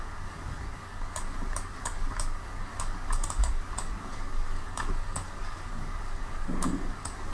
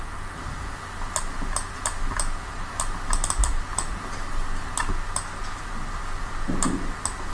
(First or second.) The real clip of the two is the second